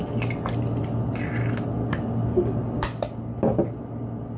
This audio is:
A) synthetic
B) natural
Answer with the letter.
B